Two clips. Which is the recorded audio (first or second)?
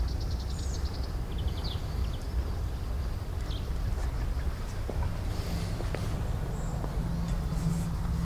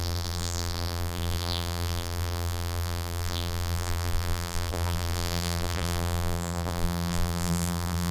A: first